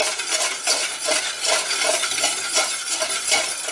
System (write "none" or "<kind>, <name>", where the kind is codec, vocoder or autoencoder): none